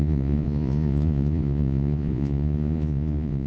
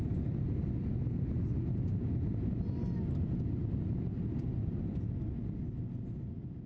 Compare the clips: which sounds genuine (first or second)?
second